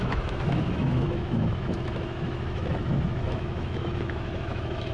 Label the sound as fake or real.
fake